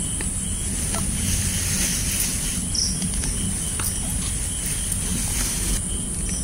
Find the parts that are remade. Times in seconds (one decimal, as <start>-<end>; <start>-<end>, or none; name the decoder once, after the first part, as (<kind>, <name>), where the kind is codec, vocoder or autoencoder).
none